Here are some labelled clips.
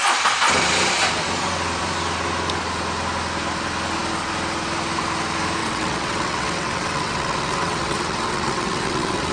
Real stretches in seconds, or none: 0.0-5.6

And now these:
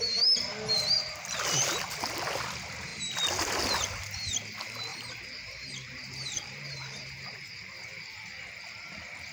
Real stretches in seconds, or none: 0.0-4.9; 7.8-9.3

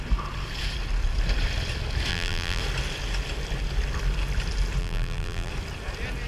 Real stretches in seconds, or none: 0.0-2.1; 2.6-4.8; 5.5-6.3